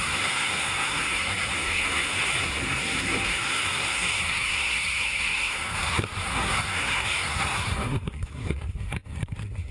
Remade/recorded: remade